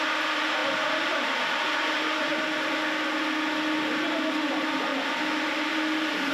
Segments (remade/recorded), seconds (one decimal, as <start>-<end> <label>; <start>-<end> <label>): 0.0-2.8 remade; 2.8-4.4 recorded; 4.4-4.9 remade; 4.9-5.7 recorded; 5.7-6.3 remade